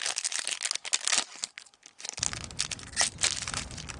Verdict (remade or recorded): recorded